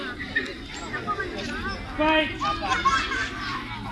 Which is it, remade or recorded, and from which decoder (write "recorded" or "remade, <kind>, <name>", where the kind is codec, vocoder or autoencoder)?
recorded